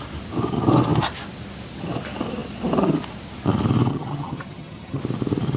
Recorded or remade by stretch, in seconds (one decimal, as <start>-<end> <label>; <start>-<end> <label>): 0.0-3.9 recorded; 3.9-5.0 remade; 5.0-5.6 recorded